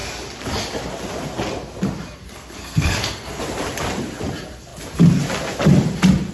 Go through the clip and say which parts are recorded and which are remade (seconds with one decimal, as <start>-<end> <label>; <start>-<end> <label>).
0.0-2.3 recorded; 2.3-3.4 remade; 3.4-6.3 recorded